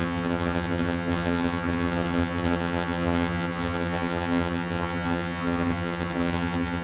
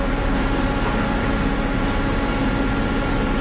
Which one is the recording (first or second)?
second